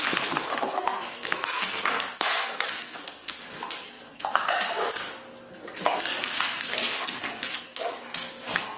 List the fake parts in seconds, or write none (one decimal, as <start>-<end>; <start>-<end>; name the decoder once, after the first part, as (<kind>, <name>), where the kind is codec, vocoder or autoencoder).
0.0-4.4 (codec, SNAC); 5.5-8.8